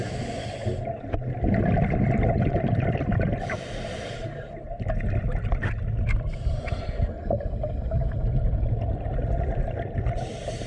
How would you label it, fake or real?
real